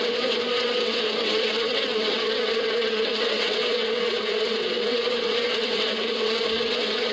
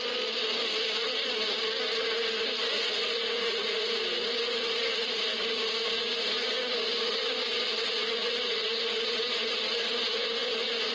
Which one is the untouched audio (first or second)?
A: second